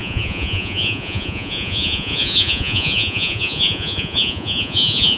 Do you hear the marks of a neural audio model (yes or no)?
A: yes